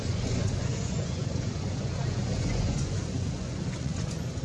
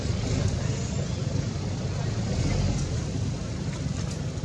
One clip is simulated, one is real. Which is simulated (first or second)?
first